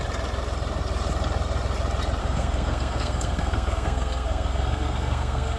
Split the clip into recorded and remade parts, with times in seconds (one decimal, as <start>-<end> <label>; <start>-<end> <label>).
0.0-2.2 recorded; 2.2-5.6 remade